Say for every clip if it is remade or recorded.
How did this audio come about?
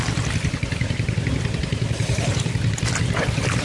recorded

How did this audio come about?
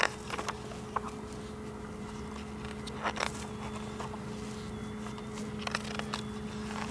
recorded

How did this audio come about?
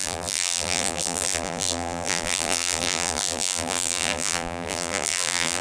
remade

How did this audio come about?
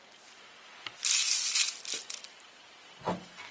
recorded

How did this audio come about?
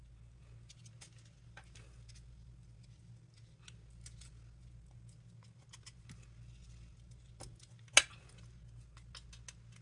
recorded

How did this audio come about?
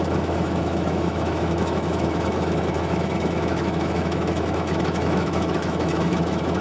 remade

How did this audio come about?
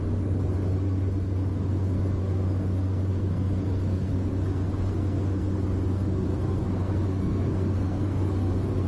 remade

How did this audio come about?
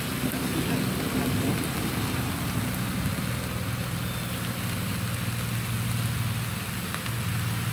recorded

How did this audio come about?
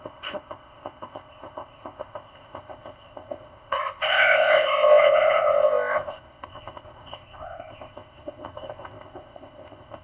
remade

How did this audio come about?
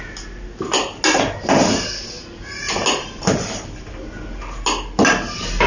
recorded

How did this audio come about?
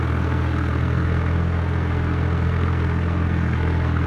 remade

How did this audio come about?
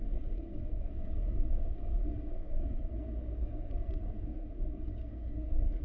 remade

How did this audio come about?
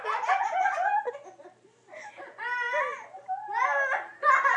recorded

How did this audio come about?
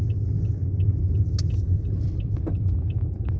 recorded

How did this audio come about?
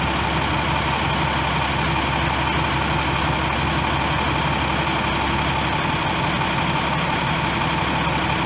recorded